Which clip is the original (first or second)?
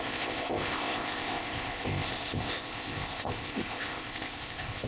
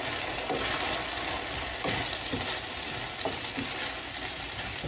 second